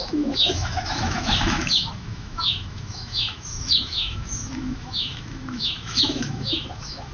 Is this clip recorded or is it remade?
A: remade